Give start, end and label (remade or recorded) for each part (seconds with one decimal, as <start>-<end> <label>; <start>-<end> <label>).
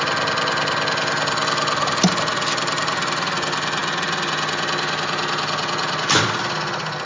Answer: 0.0-7.1 recorded